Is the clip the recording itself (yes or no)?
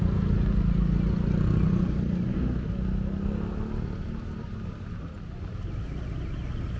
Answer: yes